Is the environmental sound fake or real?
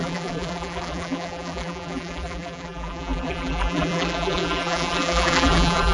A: fake